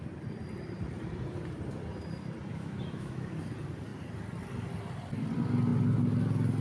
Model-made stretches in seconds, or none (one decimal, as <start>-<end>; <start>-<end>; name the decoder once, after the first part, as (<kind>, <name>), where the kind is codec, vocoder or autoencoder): 2.5-3.3 (autoencoder, DAC-VAE)